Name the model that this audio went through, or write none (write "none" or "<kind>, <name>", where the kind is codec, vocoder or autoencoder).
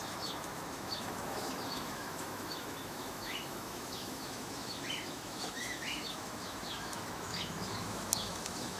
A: autoencoder, DAC-VAE